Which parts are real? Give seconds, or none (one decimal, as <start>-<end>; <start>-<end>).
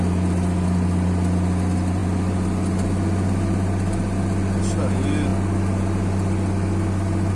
0.0-7.3